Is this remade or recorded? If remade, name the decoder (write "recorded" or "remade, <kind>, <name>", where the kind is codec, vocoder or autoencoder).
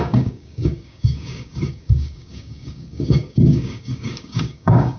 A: remade, codec, DAC